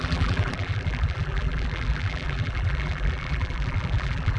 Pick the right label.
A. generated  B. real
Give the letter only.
A